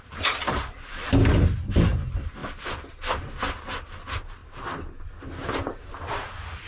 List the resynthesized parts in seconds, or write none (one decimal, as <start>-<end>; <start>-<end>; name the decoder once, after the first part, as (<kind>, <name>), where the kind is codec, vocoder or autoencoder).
none